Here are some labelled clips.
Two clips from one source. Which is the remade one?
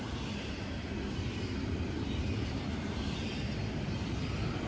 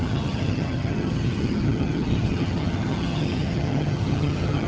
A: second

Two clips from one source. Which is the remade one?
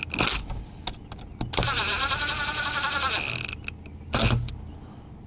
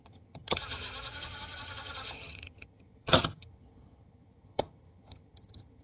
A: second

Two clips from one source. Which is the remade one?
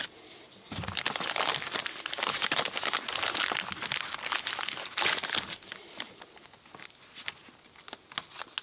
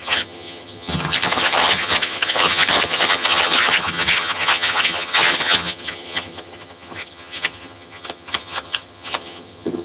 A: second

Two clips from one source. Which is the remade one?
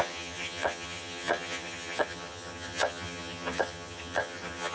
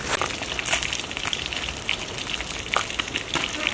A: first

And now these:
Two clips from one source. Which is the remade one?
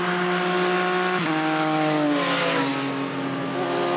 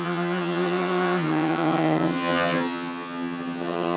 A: second